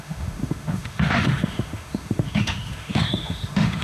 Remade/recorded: remade